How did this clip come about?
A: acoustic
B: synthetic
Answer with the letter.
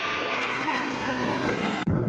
B